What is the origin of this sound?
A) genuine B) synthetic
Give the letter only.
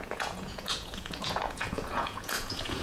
B